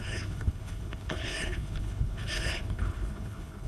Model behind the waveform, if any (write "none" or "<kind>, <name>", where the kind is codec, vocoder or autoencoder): codec, HILCodec